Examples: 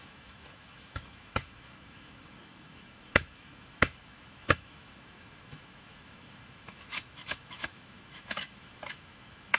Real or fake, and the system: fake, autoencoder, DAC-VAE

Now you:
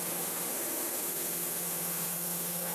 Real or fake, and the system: fake, autoencoder, DAC-VAE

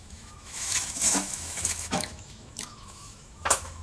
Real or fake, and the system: fake, autoencoder, DAC-VAE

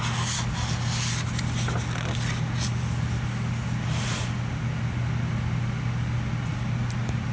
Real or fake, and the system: real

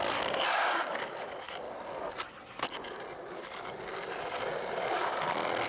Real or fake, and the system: real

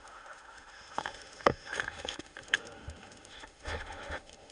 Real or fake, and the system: fake, autoencoder, DAC-VAE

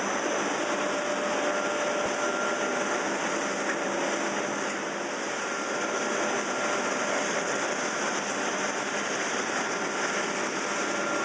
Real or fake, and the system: real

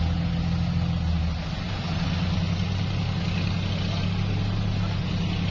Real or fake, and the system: real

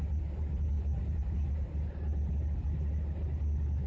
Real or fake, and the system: real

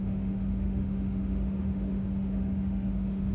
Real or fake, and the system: fake, autoencoder, DAC-VAE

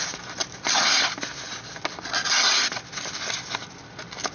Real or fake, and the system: real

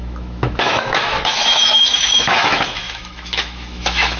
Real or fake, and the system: fake, autoencoder, DAC-VAE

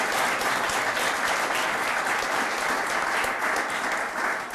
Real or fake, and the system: real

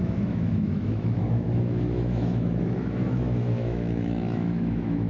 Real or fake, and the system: fake, autoencoder, DAC-VAE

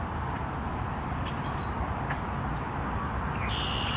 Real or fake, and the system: real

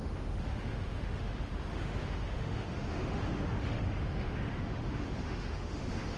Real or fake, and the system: fake, autoencoder, DAC-VAE